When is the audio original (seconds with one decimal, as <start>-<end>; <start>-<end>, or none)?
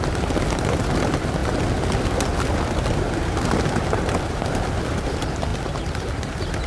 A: 0.0-6.7